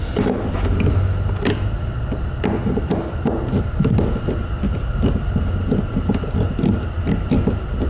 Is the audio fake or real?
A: real